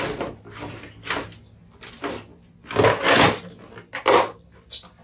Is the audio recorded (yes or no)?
yes